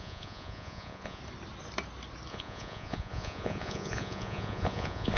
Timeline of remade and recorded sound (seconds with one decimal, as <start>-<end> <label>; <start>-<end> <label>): 0.0-1.2 remade; 1.2-2.3 recorded; 2.3-5.2 remade